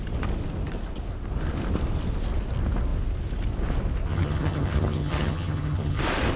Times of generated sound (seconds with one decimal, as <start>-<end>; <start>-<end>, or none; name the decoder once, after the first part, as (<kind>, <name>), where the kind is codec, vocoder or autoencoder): 4.1-6.0 (vocoder, HiFi-GAN)